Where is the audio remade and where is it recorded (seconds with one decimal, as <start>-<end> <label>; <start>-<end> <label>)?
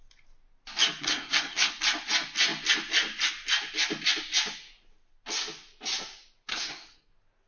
0.0-1.0 recorded; 1.0-1.7 remade; 1.7-6.5 recorded; 6.5-7.1 remade; 7.1-7.5 recorded